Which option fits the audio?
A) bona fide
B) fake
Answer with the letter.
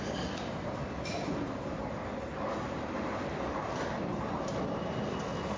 A